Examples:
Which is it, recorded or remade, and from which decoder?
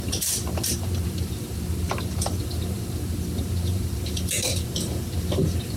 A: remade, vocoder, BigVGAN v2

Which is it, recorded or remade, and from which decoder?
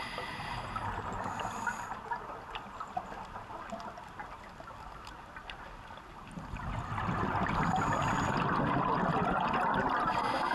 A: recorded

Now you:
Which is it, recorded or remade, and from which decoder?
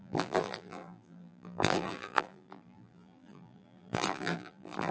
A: remade, vocoder, BigVGAN v2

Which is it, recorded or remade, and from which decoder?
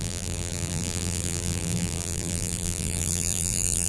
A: remade, vocoder, BigVGAN v2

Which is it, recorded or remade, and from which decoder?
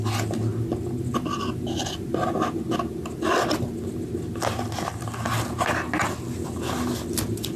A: recorded